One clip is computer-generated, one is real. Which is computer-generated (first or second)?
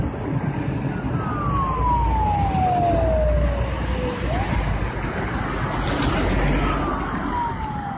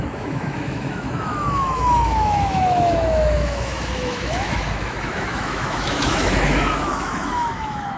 second